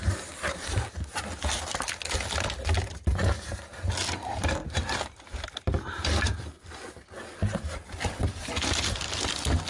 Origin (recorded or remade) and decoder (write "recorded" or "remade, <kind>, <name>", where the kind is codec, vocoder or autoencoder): recorded